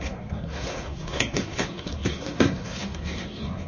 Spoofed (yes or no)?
yes